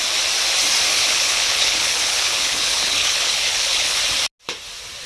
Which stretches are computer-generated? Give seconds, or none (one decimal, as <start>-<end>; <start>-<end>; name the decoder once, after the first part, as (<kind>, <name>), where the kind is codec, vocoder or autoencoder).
0.9-4.0 (codec, HILCodec)